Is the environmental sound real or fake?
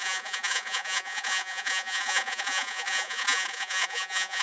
fake